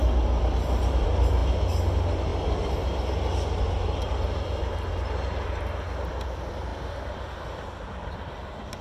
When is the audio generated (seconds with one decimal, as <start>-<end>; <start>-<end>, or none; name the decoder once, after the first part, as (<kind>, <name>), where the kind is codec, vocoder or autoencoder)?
none